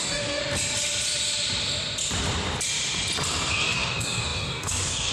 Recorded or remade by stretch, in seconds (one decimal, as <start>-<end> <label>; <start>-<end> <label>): 0.0-0.4 remade; 0.4-3.5 recorded; 3.5-5.1 remade